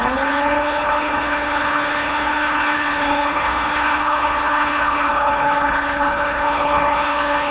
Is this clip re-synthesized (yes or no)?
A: yes